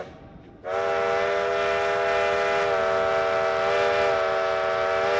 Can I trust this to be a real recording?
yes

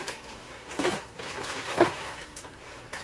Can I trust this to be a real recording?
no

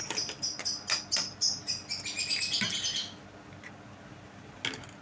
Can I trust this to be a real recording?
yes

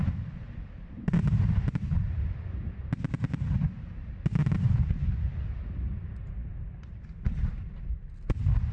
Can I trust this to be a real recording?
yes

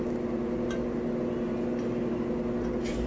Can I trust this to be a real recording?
yes